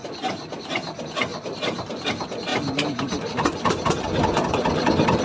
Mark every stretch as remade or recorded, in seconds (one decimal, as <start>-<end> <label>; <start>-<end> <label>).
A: 0.0-1.3 recorded; 1.3-2.1 remade; 2.1-2.5 recorded; 2.5-5.2 remade